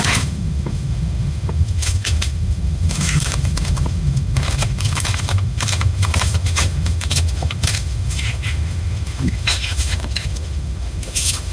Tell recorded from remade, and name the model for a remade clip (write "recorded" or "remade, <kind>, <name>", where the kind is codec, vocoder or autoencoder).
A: remade, autoencoder, DAC-VAE